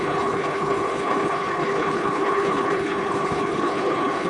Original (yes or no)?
no